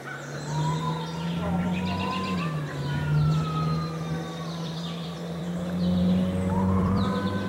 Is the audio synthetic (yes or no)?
yes